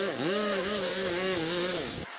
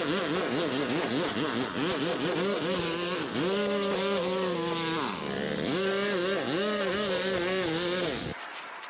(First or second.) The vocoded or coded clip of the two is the first